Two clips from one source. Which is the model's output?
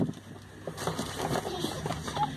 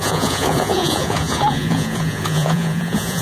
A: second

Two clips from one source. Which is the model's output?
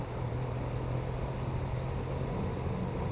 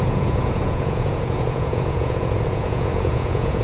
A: second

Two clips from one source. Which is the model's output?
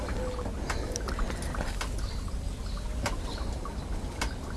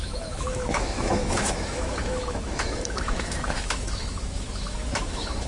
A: second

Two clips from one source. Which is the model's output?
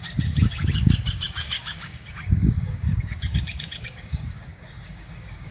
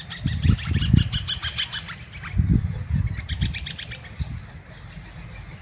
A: first